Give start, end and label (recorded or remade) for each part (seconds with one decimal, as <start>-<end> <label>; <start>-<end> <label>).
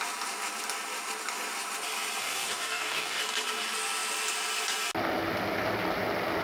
0.0-2.2 recorded; 2.2-3.2 remade; 3.2-6.4 recorded